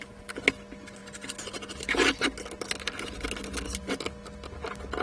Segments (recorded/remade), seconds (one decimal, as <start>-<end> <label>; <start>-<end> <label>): 0.0-5.0 recorded